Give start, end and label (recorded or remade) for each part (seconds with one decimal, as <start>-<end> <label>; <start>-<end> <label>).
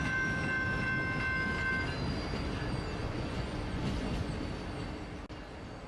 0.0-3.0 recorded; 3.0-4.3 remade; 4.3-5.9 recorded